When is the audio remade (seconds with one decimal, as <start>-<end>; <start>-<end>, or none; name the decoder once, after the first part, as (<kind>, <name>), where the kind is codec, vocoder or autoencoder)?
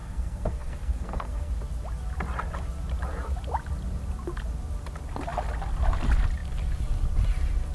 0.0-1.5 (codec, SNAC)